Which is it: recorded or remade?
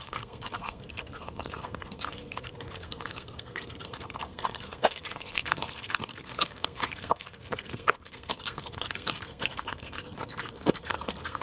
remade